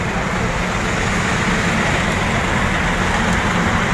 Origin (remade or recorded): recorded